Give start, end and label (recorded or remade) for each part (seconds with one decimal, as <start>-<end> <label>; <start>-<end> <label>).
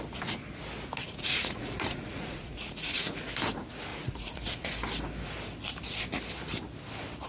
0.0-1.0 recorded; 1.0-3.3 remade; 3.3-3.9 recorded; 3.9-4.7 remade; 4.7-7.3 recorded